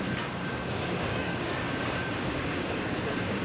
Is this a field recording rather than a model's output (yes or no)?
no